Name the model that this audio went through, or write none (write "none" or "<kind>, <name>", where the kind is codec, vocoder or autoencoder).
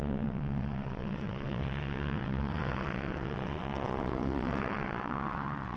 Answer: vocoder, WaveNeXt